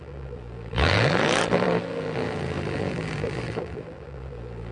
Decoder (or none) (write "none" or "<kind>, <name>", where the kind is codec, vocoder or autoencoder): vocoder, BigVGAN v2